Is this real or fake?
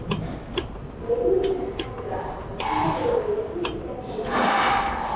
real